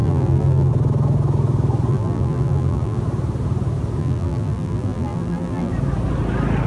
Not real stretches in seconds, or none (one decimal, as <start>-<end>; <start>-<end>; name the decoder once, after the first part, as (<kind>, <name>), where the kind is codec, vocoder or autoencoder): 0.0-0.7 (vocoder, BigVGAN v2); 1.9-3.0; 4.0-5.7